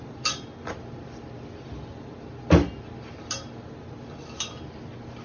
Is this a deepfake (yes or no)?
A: no